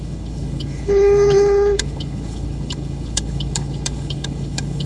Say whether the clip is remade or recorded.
remade